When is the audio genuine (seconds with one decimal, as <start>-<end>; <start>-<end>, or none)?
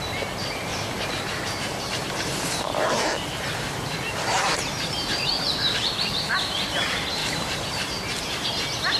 0.0-0.7; 5.9-7.2; 8.2-9.0